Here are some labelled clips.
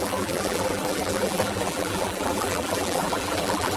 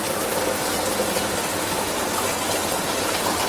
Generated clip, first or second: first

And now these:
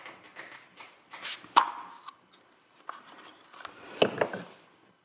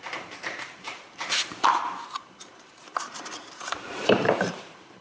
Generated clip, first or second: second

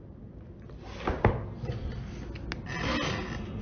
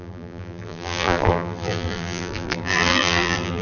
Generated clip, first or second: second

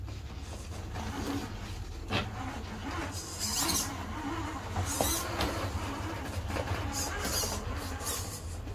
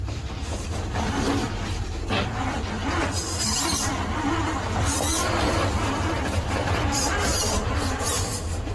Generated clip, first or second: second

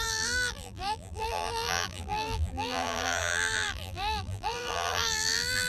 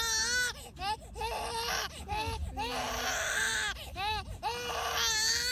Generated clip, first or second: first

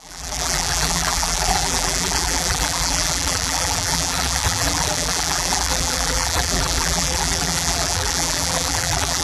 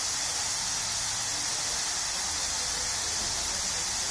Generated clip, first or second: first